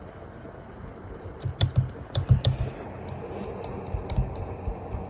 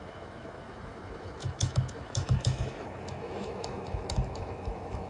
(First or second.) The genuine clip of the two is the first